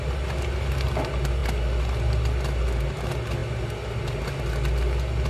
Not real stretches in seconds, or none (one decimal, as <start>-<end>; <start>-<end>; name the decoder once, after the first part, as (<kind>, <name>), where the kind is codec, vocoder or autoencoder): none